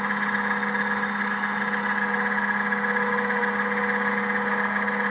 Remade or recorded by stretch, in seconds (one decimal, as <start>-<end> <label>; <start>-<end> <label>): 0.0-5.1 recorded